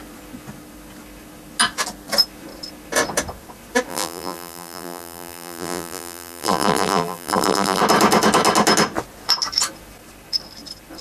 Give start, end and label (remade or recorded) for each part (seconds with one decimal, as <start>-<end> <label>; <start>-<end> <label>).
0.0-3.9 recorded; 3.9-7.8 remade; 7.8-11.0 recorded